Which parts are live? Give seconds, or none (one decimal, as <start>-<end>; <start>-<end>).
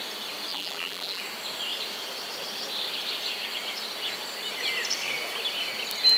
0.0-0.5; 1.2-6.2